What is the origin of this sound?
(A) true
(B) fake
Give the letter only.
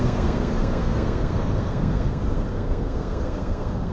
B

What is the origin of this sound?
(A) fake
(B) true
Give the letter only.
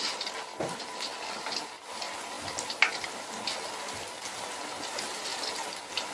B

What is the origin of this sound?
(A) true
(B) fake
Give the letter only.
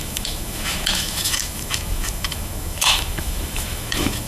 B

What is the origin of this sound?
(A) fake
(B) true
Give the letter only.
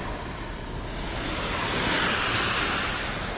B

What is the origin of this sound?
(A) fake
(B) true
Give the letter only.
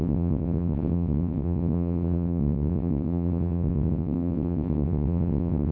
A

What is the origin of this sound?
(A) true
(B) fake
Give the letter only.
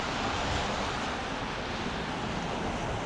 A